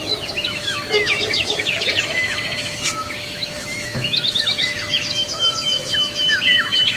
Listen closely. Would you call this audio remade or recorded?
remade